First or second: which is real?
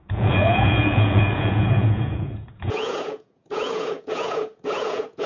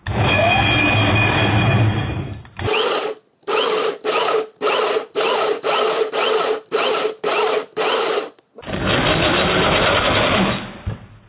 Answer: second